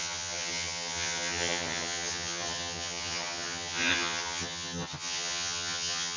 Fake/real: fake